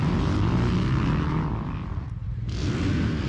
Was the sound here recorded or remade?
recorded